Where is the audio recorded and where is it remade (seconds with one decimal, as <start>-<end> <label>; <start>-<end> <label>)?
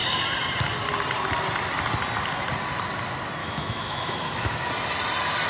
0.0-3.4 recorded; 3.4-4.7 remade; 4.7-5.5 recorded